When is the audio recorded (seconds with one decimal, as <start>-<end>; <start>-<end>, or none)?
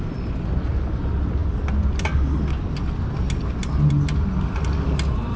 0.0-5.4